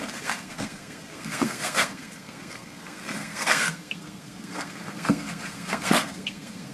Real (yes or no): no